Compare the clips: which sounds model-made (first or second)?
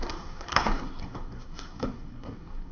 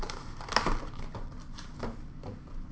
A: first